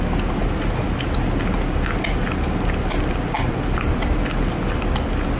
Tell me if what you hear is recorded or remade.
recorded